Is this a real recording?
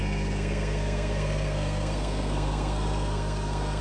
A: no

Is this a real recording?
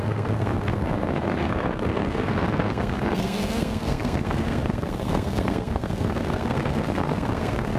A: no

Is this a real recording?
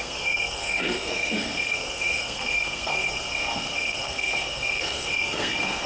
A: no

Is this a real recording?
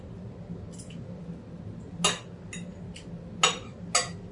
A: yes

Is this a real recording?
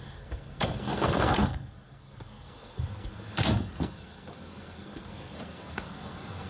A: no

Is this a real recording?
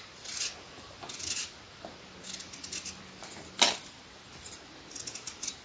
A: yes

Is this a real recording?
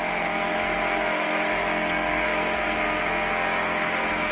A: no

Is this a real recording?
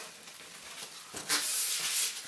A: yes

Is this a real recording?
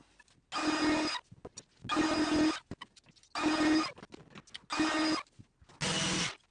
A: yes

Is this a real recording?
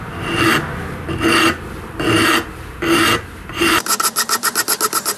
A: yes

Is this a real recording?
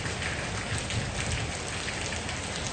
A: yes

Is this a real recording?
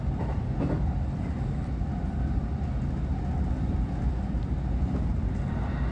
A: yes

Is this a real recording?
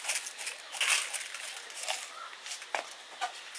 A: yes